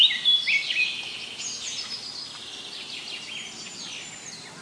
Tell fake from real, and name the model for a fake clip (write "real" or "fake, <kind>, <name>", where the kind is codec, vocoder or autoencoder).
real